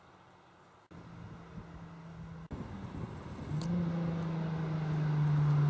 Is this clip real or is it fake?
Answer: real